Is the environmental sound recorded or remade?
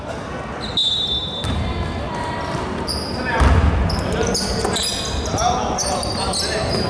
recorded